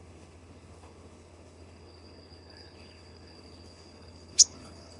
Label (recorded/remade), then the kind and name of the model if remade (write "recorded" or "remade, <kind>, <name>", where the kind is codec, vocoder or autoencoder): remade, codec, HILCodec